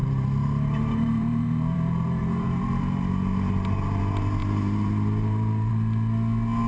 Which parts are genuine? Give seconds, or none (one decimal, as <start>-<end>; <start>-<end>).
4.0-4.4; 5.7-6.7